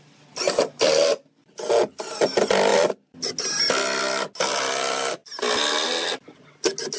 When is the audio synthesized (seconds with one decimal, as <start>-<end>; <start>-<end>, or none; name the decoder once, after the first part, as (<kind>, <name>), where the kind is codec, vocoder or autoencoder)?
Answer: none